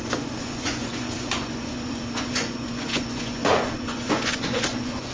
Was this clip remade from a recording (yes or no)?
yes